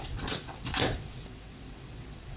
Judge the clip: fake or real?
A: fake